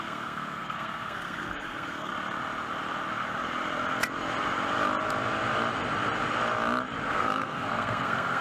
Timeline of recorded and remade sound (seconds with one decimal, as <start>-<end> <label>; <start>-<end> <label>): 0.0-2.1 remade; 2.1-7.1 recorded; 7.1-8.4 remade